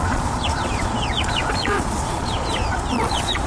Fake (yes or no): yes